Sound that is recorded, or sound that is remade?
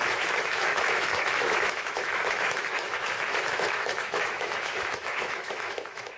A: remade